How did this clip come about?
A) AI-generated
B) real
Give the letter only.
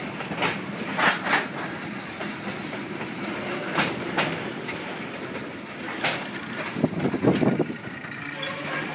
B